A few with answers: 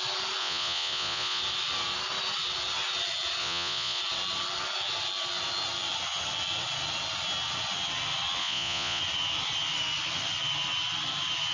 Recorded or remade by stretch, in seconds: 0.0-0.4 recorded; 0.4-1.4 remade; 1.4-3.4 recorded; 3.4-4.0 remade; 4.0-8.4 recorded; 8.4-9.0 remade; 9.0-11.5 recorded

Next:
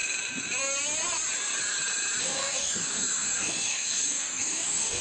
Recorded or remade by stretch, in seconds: 0.0-2.2 recorded; 2.2-5.0 remade

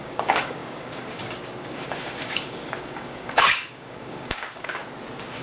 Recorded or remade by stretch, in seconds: 0.0-4.8 remade; 4.8-5.4 recorded

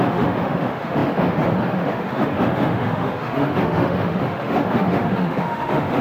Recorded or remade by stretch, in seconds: 0.0-6.0 remade

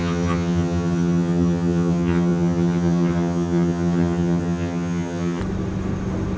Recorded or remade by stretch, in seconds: 0.0-5.4 remade; 5.4-6.4 recorded